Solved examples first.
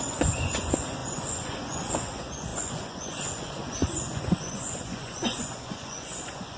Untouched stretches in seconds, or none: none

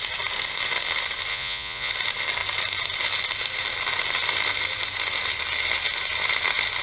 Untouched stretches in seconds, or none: 0.0-1.3; 1.9-6.8

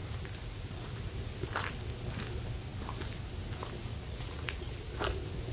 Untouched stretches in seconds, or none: 0.0-3.9; 4.7-5.5

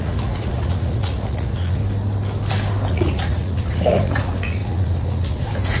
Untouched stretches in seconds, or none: 1.8-2.9

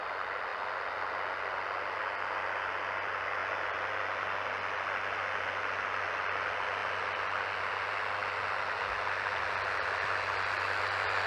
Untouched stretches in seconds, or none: 0.0-11.3

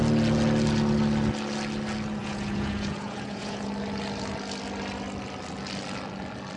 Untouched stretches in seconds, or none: 0.0-2.2; 3.7-6.6